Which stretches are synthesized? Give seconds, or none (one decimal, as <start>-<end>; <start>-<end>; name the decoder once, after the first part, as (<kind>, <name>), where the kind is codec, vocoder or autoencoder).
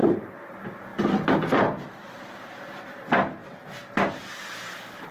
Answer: 0.0-0.5 (vocoder, BigVGAN v2)